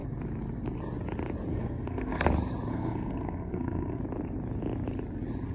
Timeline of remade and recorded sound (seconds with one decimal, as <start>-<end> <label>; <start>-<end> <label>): 0.0-1.5 recorded; 1.5-2.2 remade; 2.2-2.7 recorded; 2.7-4.0 remade; 4.0-5.5 recorded